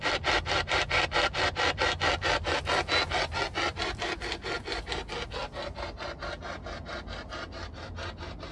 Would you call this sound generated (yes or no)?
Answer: no